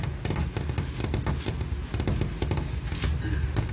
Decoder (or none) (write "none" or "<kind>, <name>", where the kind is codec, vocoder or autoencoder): none